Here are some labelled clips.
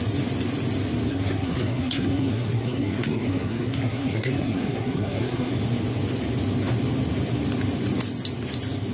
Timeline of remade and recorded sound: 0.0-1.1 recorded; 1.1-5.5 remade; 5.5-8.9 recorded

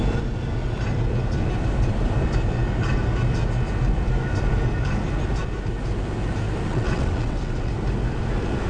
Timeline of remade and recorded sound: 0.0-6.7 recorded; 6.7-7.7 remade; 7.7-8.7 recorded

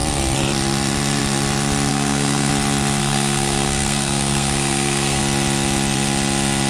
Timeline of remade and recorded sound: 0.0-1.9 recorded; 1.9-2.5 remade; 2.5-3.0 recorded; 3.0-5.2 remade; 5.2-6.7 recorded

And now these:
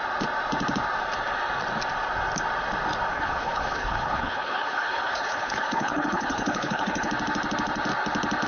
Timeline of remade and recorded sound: 0.0-3.1 recorded; 3.1-7.1 remade; 7.1-8.5 recorded

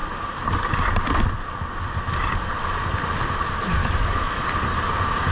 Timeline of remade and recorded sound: 0.0-3.8 recorded; 3.8-4.4 remade; 4.4-5.3 recorded

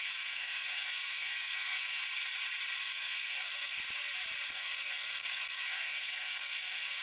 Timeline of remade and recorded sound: 0.0-2.0 remade; 2.0-2.8 recorded; 2.8-3.8 remade; 3.8-4.5 recorded; 4.5-7.0 remade